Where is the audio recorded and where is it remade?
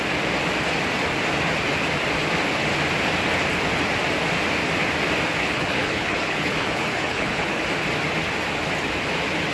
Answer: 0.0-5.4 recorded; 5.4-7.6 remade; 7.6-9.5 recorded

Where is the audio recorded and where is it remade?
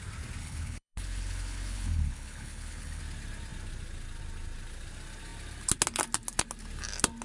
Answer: 0.0-0.4 recorded; 0.4-3.0 remade; 3.0-7.2 recorded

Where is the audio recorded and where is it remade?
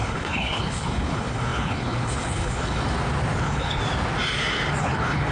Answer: 0.0-2.8 remade; 2.8-3.4 recorded; 3.4-3.8 remade; 3.8-4.8 recorded; 4.8-5.3 remade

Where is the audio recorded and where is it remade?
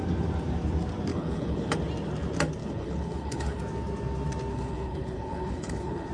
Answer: 0.0-1.1 recorded; 1.1-1.7 remade; 1.7-2.6 recorded; 2.6-3.6 remade; 3.6-4.5 recorded; 4.5-6.1 remade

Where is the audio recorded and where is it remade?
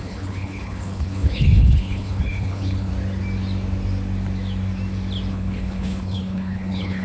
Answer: 0.0-2.9 remade; 2.9-5.3 recorded; 5.3-7.0 remade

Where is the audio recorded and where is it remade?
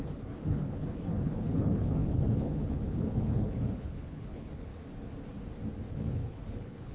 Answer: 0.0-4.7 remade; 4.7-5.9 recorded; 5.9-6.9 remade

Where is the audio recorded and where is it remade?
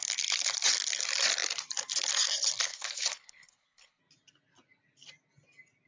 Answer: 0.0-2.7 recorded; 2.7-4.0 remade; 4.0-5.9 recorded